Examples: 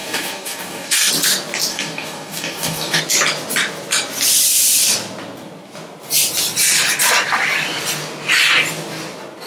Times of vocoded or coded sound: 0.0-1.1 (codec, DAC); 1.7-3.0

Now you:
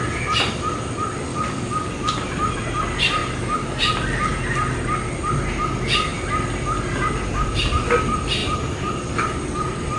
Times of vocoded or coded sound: 1.3-1.9 (codec, DAC)